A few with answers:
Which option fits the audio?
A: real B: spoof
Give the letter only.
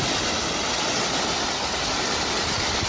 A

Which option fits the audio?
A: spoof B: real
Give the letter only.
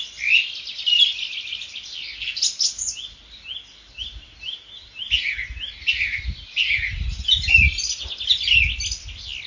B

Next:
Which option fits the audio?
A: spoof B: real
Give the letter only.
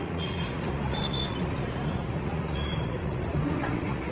A